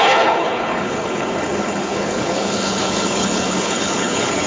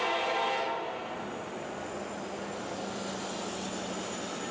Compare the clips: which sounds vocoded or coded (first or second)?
first